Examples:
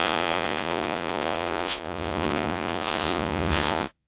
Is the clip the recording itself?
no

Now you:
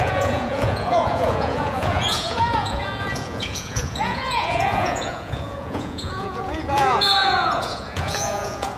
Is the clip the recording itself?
no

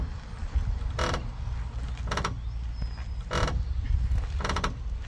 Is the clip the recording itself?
yes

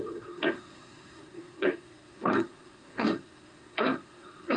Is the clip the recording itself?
no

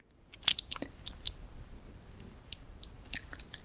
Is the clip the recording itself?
yes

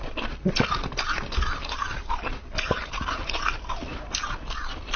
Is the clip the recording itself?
yes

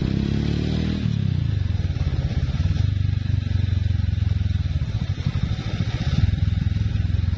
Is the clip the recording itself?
yes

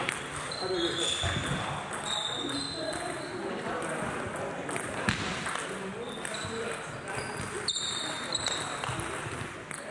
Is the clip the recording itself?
yes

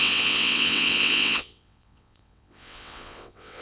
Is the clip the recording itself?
no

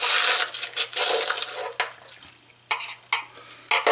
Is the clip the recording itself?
yes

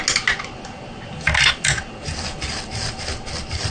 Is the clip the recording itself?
yes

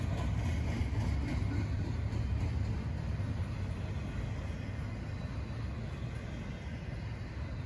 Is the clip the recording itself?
yes